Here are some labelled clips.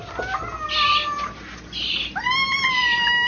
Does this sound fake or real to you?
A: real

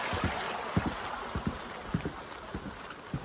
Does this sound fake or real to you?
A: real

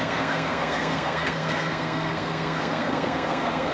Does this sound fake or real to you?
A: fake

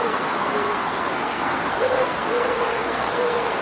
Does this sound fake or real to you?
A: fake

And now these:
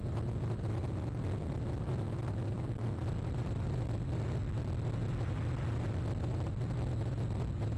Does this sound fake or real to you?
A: real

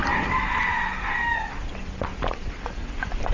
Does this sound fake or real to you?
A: real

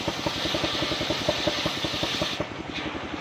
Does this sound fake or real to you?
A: real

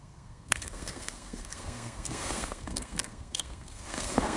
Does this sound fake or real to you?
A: fake